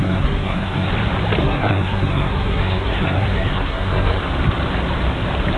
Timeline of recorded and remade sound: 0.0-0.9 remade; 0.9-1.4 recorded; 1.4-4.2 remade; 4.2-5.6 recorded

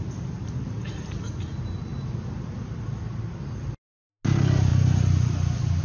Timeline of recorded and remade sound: 0.0-5.8 recorded

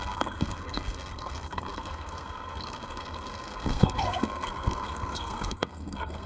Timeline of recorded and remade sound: 0.0-6.3 remade

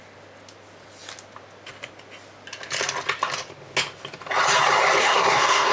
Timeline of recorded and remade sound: 0.0-5.0 recorded; 5.0-5.7 remade